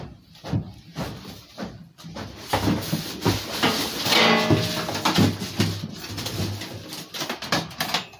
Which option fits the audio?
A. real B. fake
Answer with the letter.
A